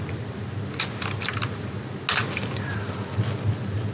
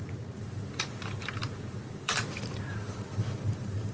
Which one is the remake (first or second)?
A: second